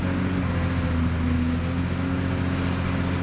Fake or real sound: real